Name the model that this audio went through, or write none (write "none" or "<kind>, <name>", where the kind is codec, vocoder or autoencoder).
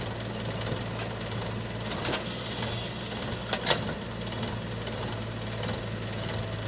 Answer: none